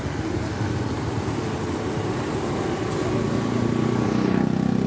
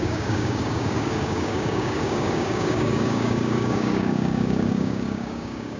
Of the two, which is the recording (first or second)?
first